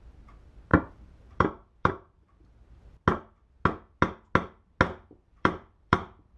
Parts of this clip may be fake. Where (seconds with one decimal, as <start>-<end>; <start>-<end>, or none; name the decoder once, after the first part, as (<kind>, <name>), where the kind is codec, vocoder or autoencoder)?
0.7-1.9 (vocoder, BigVGAN v2); 5.3-6.4